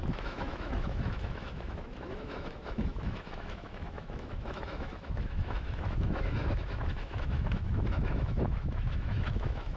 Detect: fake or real fake